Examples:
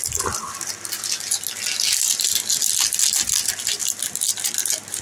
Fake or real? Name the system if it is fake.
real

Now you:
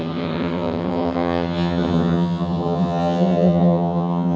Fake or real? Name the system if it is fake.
fake, vocoder, HiFi-GAN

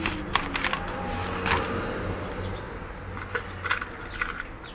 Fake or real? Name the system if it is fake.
real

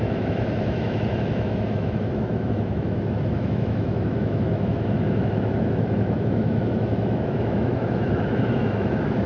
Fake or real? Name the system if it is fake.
fake, autoencoder, DAC-VAE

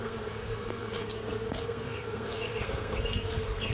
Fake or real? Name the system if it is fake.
fake, codec, SNAC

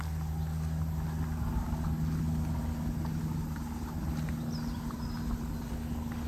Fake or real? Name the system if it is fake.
real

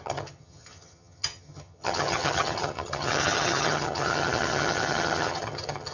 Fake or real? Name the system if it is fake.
fake, vocoder, HiFi-GAN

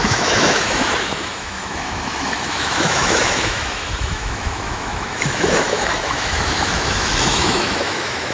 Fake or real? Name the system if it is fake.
fake, autoencoder, DAC-VAE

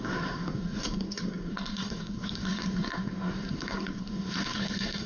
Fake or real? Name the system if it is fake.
fake, codec, SNAC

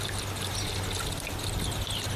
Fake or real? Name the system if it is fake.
real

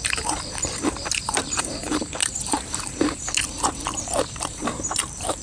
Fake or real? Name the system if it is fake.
fake, vocoder, BigVGAN v2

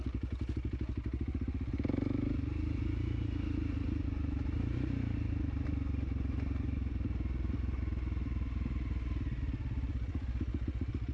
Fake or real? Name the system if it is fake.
real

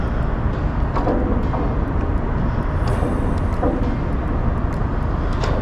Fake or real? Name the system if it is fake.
real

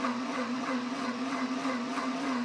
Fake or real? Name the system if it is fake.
fake, vocoder, WaveNeXt